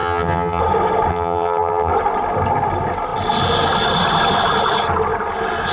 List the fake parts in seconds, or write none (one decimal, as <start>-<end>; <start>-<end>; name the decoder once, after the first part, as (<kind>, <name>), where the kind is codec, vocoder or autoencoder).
0.0-0.6 (vocoder, HiFi-GAN); 1.1-1.9